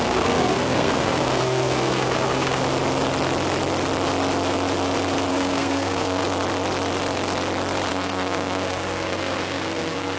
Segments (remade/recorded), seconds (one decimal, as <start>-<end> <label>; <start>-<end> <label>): 0.0-2.6 remade; 2.6-5.3 recorded; 5.3-6.2 remade; 6.2-7.9 recorded; 7.9-10.2 remade